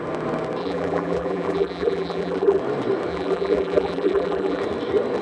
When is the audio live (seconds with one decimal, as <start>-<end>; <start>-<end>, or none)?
0.0-0.6; 2.6-3.1; 4.6-5.2

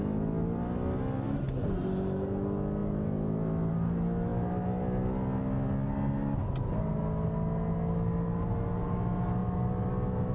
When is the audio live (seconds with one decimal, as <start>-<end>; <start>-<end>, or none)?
0.0-10.3

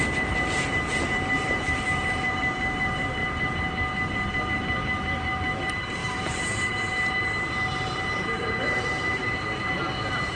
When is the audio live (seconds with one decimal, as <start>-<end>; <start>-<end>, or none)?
3.2-4.5